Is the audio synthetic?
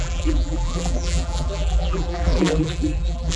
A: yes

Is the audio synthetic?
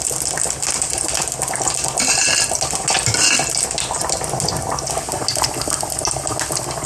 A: no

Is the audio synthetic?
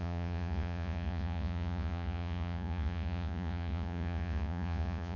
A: yes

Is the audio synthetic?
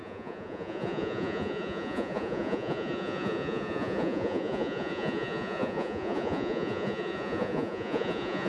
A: yes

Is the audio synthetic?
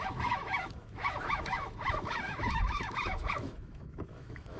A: yes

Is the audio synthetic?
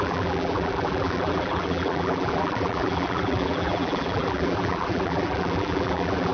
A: yes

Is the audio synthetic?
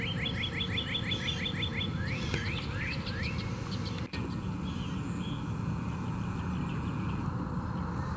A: no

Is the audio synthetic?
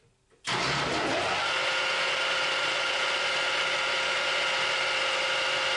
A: no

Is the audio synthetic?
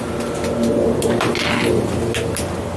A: no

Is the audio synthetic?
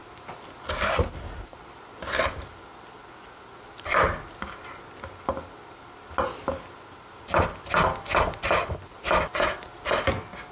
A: no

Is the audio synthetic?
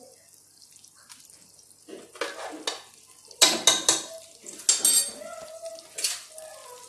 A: no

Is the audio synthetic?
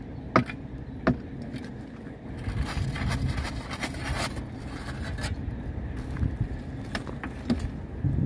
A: no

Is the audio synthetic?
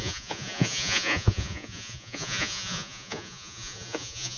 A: yes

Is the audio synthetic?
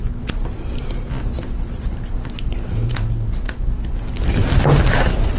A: no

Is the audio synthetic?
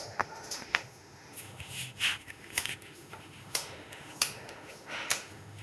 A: yes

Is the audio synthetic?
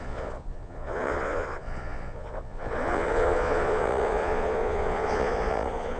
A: yes